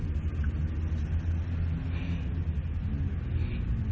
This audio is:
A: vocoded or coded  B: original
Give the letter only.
B